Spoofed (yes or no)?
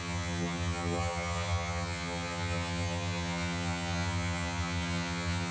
yes